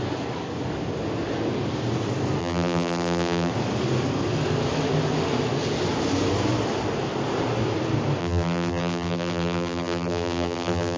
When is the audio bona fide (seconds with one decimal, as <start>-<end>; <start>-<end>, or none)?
0.0-2.4; 3.5-8.2